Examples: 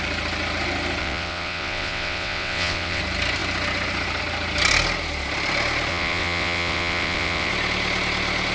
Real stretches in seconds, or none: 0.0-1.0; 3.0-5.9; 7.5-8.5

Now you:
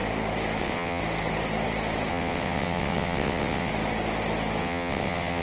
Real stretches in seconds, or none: 0.0-0.6; 1.0-2.1; 3.7-4.6

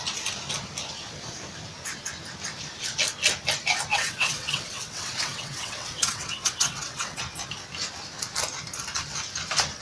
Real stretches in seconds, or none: 0.0-3.9; 7.2-9.8

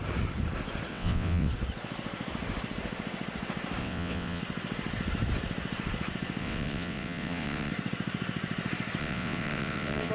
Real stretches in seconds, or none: 0.0-0.9; 1.5-3.8; 4.4-6.4; 7.7-9.0